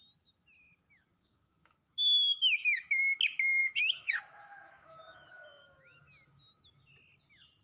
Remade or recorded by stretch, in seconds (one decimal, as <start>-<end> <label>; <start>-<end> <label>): 0.0-1.2 recorded; 1.2-3.2 remade; 3.2-3.6 recorded; 3.6-6.0 remade; 6.0-7.6 recorded